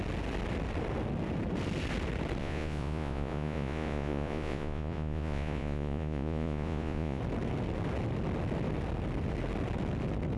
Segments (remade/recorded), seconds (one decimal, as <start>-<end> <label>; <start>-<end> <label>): 0.0-2.4 recorded; 2.4-7.2 remade; 7.2-10.4 recorded